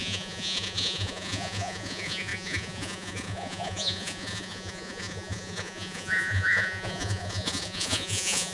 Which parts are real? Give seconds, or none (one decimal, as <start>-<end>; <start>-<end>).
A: none